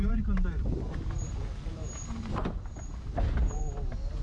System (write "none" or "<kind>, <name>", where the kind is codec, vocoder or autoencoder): vocoder, BigVGAN v2